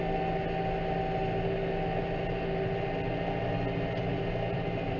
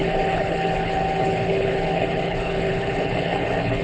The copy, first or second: second